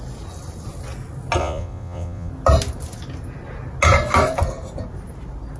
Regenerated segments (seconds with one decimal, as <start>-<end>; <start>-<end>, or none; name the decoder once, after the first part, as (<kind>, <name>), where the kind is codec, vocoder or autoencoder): 1.4-2.3 (vocoder, Vocos)